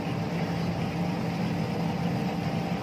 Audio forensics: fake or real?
real